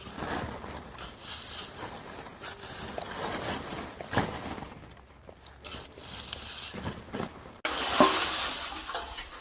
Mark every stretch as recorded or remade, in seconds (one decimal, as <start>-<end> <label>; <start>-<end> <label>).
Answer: 0.0-9.4 recorded